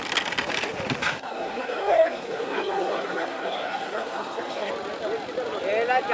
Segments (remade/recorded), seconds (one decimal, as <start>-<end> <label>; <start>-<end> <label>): 0.0-1.0 recorded; 1.0-4.7 remade; 4.7-6.1 recorded